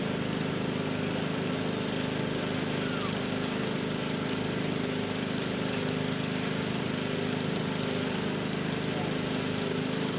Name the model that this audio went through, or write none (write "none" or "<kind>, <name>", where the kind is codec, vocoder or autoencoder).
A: none